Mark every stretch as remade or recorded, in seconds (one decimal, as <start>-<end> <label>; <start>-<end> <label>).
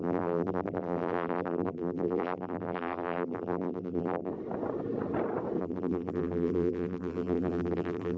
0.0-4.3 remade; 4.3-5.6 recorded; 5.6-8.2 remade